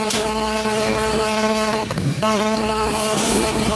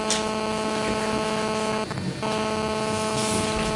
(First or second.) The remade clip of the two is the first